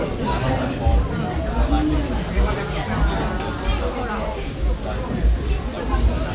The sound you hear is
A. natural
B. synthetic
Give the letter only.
A